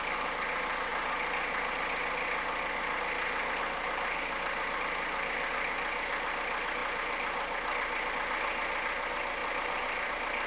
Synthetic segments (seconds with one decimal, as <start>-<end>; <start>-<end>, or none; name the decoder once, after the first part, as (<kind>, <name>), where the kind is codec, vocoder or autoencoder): 9.4-10.1 (vocoder, BigVGAN v2)

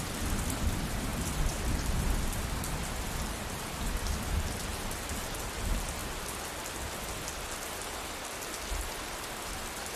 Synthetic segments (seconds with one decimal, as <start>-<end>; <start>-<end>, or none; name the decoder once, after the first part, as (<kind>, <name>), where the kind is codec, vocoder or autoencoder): 0.0-4.7 (vocoder, BigVGAN v2); 5.4-6.0

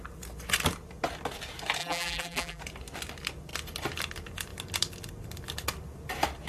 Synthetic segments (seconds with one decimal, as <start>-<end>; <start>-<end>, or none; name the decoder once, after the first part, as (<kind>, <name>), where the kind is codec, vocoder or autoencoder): 1.8-2.6 (vocoder, BigVGAN v2)

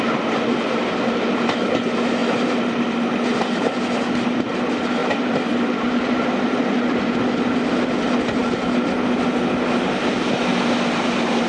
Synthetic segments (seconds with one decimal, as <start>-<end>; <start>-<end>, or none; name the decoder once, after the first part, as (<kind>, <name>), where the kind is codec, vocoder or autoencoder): 2.2-3.4 (vocoder, BigVGAN v2); 5.0-7.2

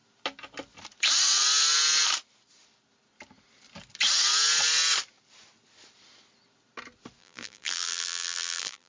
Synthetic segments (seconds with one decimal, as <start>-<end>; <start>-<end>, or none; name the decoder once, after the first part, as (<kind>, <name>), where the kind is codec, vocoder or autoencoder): 7.2-8.9 (vocoder, BigVGAN v2)

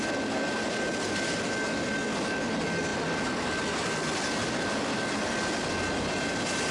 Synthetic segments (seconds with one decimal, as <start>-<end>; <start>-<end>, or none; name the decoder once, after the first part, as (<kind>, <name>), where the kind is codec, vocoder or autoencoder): none

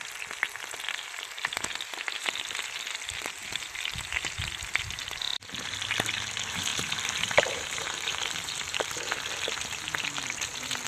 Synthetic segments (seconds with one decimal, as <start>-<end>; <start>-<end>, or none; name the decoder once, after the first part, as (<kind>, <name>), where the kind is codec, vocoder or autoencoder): 6.7-8.8 (vocoder, BigVGAN v2)

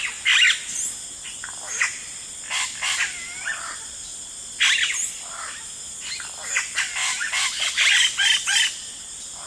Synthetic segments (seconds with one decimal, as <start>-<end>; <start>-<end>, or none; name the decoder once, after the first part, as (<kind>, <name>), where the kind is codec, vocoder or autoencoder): 7.0-7.9 (vocoder, BigVGAN v2)